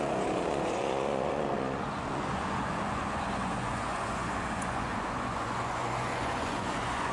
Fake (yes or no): yes